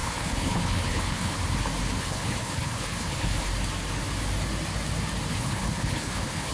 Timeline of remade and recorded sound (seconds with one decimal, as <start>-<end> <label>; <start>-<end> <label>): 0.0-1.4 remade; 1.4-2.0 recorded; 2.0-3.5 remade; 3.5-5.3 recorded; 5.3-6.5 remade